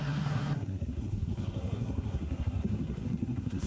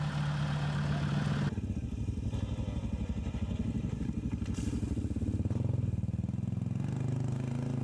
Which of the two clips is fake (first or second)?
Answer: first